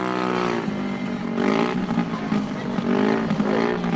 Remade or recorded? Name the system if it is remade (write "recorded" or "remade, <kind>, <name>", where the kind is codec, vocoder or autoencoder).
recorded